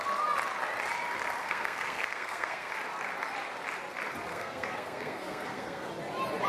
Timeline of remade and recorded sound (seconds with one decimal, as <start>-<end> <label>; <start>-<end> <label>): 0.0-1.4 recorded; 1.4-2.7 remade; 2.7-4.3 recorded; 4.3-5.9 remade; 5.9-6.5 recorded